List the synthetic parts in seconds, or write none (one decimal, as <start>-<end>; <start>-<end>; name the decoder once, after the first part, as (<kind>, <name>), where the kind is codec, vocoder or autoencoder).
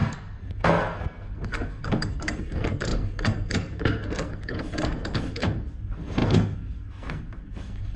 0.0-8.0 (codec, SNAC)